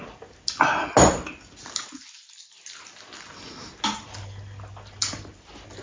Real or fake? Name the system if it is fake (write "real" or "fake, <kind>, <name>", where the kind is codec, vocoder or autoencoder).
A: real